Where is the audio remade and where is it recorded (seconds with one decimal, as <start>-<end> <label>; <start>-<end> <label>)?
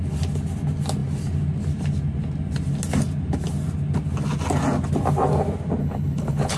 0.0-5.8 recorded; 5.8-6.6 remade